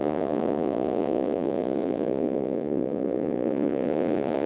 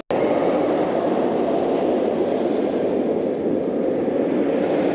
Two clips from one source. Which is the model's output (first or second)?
first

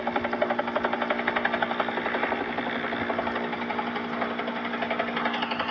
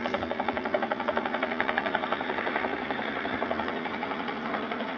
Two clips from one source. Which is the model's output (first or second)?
second